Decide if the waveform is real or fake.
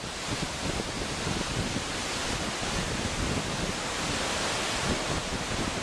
real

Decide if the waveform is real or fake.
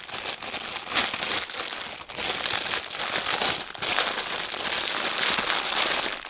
real